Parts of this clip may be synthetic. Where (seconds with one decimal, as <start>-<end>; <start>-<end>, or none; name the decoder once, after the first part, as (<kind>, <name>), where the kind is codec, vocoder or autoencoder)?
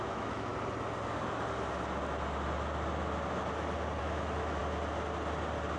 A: 0.0-0.5 (autoencoder, DAC-VAE); 4.0-4.6